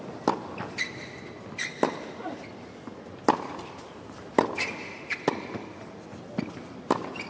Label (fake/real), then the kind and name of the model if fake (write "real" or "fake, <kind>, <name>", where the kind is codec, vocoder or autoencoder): real